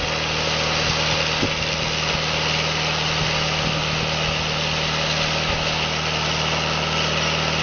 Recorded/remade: recorded